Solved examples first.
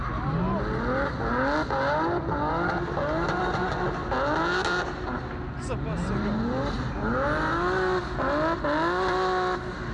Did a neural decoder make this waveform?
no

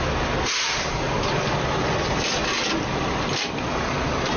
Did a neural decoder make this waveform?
no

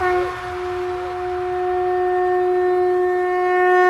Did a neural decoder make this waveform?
no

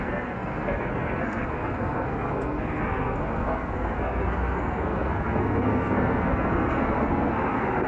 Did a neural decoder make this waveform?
yes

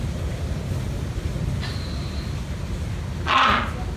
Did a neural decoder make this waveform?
no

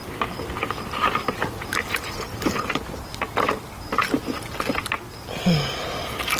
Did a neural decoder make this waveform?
no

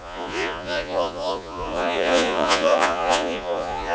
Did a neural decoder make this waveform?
yes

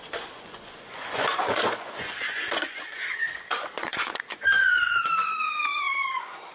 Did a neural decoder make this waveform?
yes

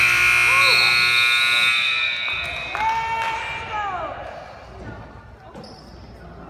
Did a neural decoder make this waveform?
no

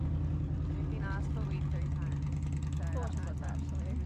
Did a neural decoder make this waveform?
no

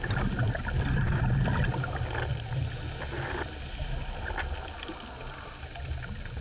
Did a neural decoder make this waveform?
no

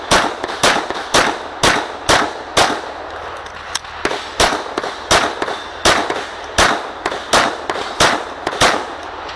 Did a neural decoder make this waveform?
no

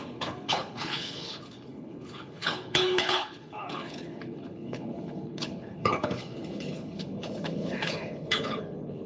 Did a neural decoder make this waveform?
yes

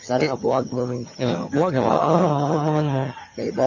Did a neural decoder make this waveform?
yes